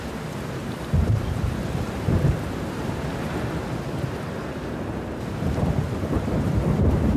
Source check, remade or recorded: remade